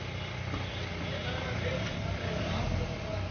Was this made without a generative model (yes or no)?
yes